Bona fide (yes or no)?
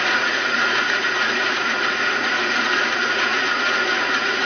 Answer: no